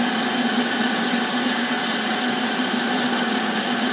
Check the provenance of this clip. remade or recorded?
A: recorded